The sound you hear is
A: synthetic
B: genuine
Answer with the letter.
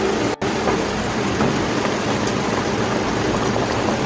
B